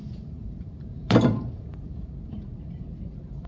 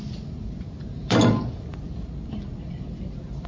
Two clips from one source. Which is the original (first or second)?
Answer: second